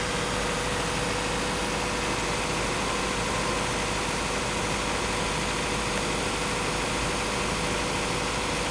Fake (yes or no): no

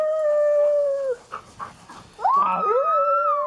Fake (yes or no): no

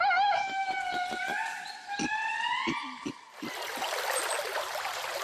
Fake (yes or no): yes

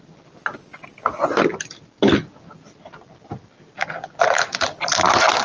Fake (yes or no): no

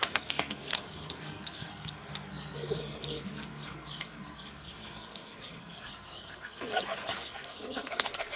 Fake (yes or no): yes